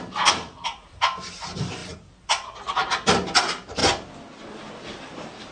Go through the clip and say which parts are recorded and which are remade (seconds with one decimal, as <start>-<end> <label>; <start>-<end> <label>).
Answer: 0.0-3.8 remade; 3.8-4.7 recorded; 4.7-5.5 remade